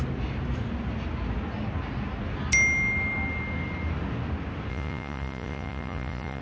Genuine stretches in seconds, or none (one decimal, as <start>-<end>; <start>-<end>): 0.0-4.7